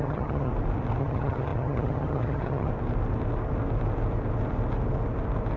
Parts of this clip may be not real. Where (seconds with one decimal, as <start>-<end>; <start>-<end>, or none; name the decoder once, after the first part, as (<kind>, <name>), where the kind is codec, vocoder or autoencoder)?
0.0-0.5 (vocoder, HiFi-GAN); 1.0-2.7